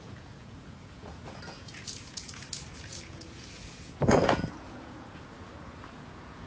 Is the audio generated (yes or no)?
yes